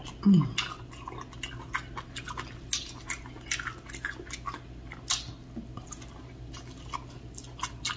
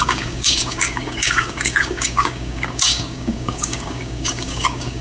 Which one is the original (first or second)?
first